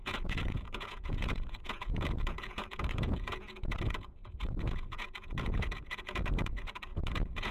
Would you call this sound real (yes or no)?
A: no